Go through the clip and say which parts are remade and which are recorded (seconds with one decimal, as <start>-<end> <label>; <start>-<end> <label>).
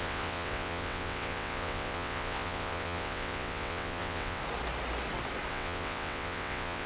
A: 0.0-4.4 remade; 4.4-5.5 recorded; 5.5-6.9 remade